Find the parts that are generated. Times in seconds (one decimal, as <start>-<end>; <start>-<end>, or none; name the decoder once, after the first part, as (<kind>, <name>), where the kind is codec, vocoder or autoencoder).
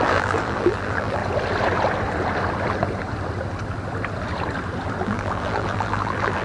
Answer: 0.0-1.2 (vocoder, BigVGAN v2); 5.0-6.4